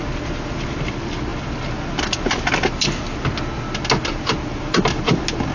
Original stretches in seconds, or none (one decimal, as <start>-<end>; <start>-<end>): 0.0-5.5